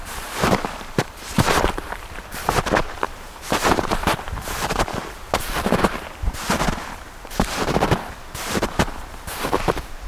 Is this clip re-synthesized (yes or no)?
yes